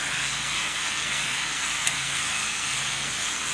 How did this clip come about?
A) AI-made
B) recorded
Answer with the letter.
A